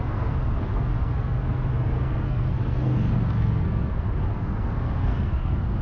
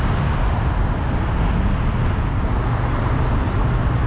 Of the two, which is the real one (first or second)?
second